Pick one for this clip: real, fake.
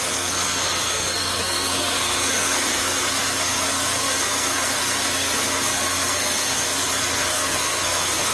fake